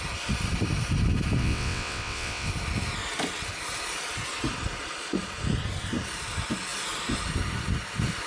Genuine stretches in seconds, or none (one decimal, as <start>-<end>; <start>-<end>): 0.0-1.4; 2.5-8.3